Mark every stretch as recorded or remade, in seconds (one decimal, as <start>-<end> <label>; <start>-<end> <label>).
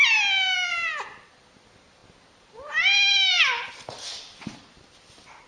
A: 0.0-5.5 recorded